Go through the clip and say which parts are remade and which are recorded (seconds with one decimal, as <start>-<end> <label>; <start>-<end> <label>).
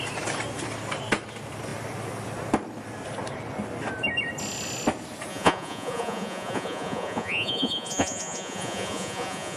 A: 0.0-5.3 recorded; 5.3-9.6 remade